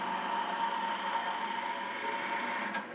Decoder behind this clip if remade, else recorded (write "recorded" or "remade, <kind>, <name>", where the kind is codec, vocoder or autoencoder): recorded